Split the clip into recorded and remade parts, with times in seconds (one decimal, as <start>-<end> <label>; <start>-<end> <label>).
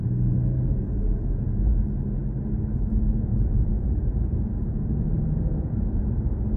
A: 0.0-3.3 recorded; 3.3-6.0 remade; 6.0-6.6 recorded